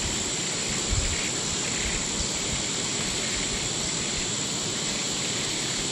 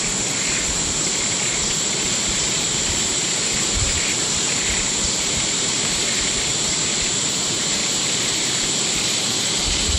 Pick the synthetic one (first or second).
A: second